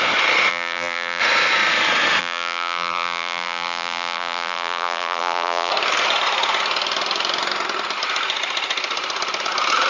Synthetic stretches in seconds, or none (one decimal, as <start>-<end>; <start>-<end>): 0.5-1.2; 2.2-5.7